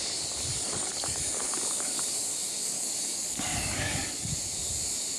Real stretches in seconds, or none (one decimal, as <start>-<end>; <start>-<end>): 0.0-0.5; 1.2-2.6; 4.3-5.2